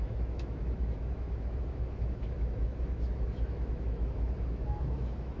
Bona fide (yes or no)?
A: no